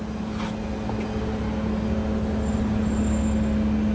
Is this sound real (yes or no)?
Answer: yes